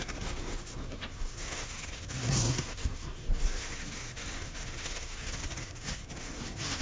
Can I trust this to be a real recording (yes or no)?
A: no